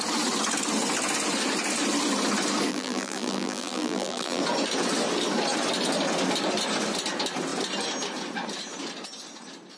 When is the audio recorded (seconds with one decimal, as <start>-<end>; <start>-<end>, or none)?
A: 0.0-2.7; 4.4-9.8